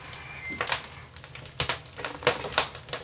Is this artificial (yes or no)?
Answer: no